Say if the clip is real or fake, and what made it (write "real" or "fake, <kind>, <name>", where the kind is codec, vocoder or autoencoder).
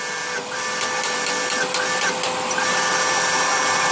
real